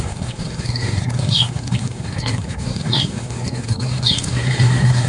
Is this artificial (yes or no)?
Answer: yes